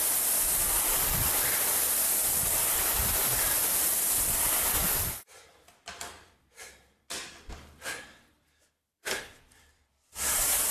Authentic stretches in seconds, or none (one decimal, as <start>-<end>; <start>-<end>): 4.8-8.9